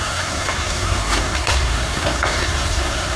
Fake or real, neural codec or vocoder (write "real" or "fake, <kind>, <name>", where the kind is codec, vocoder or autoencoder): fake, codec, SNAC